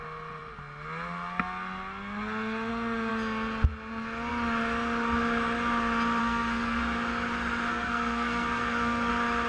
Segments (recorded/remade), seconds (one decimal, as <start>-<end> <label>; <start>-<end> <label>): 0.0-6.2 recorded; 6.2-6.8 remade; 6.8-7.7 recorded; 7.7-9.1 remade; 9.1-9.5 recorded